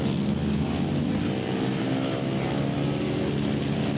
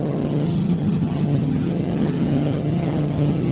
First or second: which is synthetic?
second